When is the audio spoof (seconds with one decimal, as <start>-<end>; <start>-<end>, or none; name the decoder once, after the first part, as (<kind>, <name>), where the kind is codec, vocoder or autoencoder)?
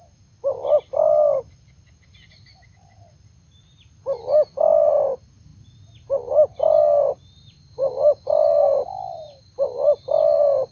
none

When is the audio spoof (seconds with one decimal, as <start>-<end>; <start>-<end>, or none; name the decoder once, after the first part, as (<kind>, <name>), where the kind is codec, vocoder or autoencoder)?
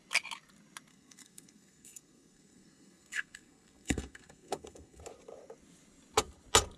0.9-5.0 (codec, SNAC)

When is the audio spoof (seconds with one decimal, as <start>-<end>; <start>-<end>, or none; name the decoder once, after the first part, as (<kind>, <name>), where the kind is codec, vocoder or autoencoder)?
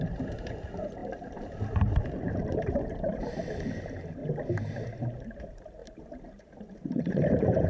0.0-4.2 (vocoder, BigVGAN v2); 4.7-7.7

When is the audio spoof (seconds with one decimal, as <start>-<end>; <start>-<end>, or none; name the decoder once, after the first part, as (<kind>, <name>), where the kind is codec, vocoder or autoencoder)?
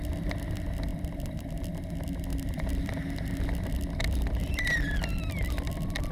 0.9-1.6 (vocoder, BigVGAN v2); 2.3-2.9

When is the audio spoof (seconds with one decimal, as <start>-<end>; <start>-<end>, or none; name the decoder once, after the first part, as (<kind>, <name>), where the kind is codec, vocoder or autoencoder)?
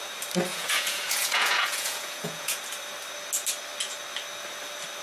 0.5-2.6 (vocoder, Vocos)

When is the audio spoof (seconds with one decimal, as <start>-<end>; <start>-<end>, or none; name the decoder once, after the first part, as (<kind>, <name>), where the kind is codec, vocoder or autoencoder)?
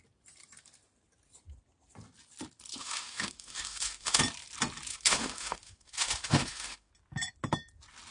2.7-4.2 (autoencoder, DAC-VAE); 4.9-6.9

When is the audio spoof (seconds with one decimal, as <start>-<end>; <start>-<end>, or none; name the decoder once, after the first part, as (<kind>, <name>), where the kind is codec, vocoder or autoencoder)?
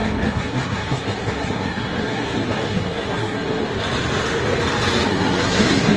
0.0-3.6 (codec, SNAC); 5.1-6.0